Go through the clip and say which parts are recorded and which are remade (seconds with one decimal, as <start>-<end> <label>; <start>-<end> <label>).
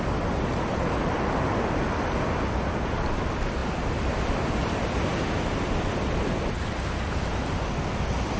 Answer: 0.0-8.4 recorded